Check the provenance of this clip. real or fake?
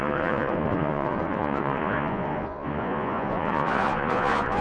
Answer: fake